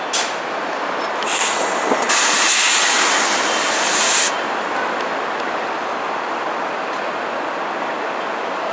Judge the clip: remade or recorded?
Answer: recorded